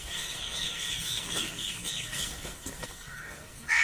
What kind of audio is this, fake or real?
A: fake